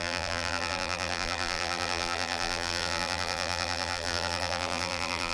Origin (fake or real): fake